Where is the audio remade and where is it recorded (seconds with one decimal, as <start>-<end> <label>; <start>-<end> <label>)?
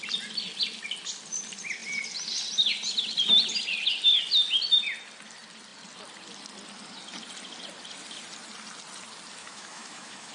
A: 0.0-9.4 recorded; 9.4-10.3 remade